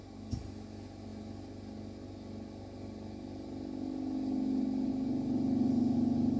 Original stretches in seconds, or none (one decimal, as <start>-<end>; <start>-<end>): 0.0-6.4